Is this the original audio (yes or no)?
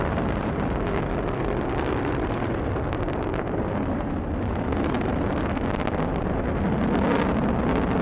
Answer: no